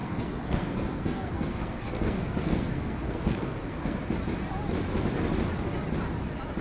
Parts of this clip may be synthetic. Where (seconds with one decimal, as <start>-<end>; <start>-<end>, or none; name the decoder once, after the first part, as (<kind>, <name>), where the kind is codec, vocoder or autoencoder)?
0.0-4.0 (codec, SNAC)